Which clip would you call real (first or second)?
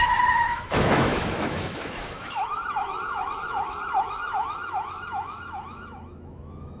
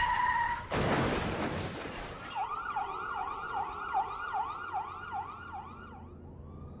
second